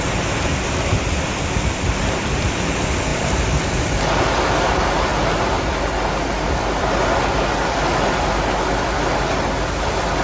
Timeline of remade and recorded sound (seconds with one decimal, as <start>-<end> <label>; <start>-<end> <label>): 0.0-10.2 recorded

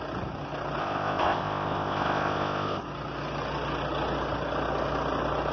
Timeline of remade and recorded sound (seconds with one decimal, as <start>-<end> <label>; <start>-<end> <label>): 0.0-0.8 recorded; 0.8-2.8 remade; 2.8-5.5 recorded